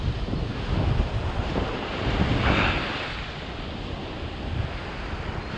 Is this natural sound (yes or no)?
yes